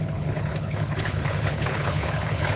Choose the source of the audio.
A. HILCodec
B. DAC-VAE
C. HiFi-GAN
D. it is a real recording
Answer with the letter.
A